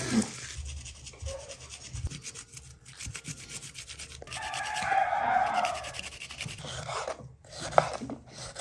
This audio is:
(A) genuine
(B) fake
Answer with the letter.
A